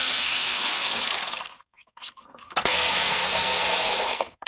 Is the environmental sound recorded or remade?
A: remade